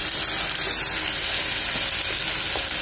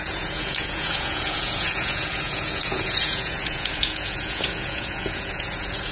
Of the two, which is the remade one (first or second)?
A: second